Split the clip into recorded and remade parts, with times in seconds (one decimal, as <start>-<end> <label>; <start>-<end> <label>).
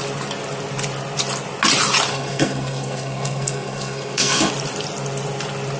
0.0-2.1 recorded; 2.1-4.5 remade; 4.5-5.8 recorded